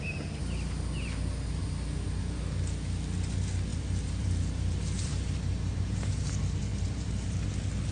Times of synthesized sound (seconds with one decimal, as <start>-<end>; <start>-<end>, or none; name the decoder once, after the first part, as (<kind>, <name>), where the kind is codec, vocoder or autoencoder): 3.7-6.3 (vocoder, BigVGAN v2); 6.7-7.4